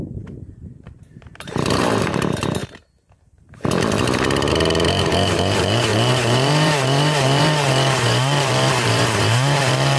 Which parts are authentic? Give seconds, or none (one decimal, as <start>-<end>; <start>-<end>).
2.6-4.5